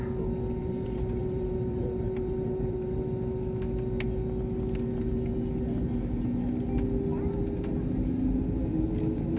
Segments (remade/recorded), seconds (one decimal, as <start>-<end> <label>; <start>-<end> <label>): 0.0-0.6 recorded; 0.6-3.0 remade; 3.0-9.4 recorded